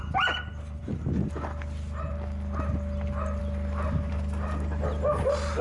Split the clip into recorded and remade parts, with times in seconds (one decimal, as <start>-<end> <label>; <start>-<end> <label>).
0.0-5.6 recorded